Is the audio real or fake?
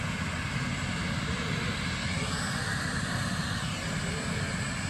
real